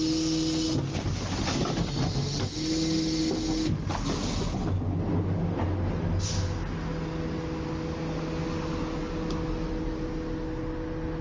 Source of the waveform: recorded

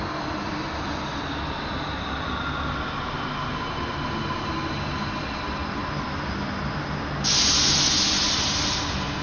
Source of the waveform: recorded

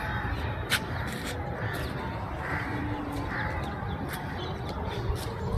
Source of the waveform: recorded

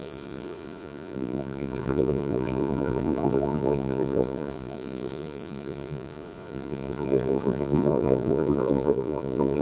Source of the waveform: remade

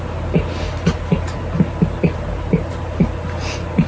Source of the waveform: recorded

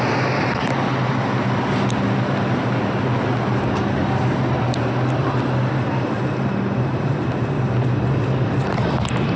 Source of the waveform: recorded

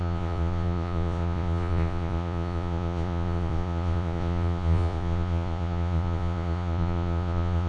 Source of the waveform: remade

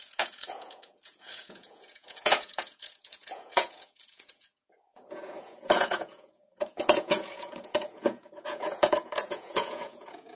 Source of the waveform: remade